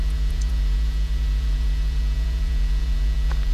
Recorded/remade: remade